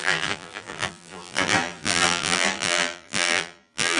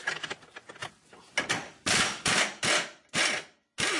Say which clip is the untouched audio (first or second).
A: second